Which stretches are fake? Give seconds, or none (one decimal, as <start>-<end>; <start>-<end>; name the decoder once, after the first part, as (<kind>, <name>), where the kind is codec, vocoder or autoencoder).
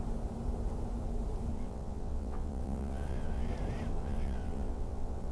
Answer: 1.5-3.5 (vocoder, WaveNeXt); 3.9-5.3